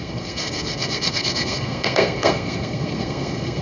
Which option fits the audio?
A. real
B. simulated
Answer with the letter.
B